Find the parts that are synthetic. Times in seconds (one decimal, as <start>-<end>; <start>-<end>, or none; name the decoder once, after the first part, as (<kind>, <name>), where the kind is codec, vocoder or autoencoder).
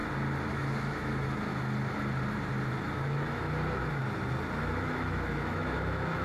0.5-1.5 (autoencoder, DAC-VAE); 2.7-4.0; 4.6-6.2